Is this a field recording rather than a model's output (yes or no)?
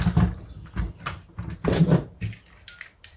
yes